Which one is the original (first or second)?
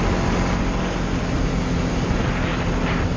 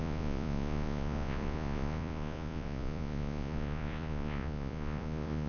first